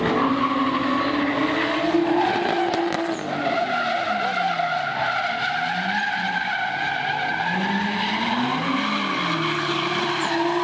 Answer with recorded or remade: recorded